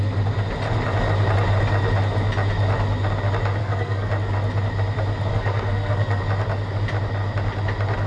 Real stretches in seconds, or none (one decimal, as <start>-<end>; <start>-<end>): 0.0-3.6; 4.1-5.3; 6.2-8.1

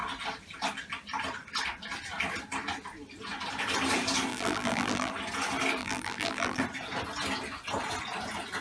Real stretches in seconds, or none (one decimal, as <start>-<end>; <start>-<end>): 0.0-4.3; 5.1-5.8; 6.6-8.6

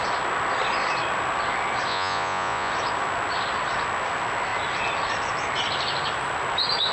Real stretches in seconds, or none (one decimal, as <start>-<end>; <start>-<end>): 0.0-1.9; 2.7-6.9

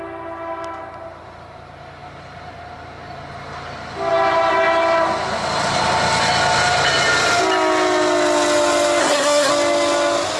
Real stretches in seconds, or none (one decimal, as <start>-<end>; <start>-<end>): 0.0-9.0; 9.5-10.4

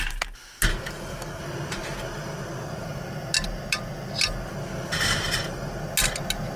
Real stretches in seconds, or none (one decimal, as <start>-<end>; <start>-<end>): 0.0-0.7; 1.4-6.6